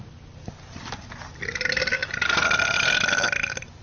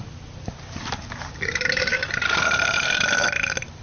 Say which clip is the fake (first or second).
second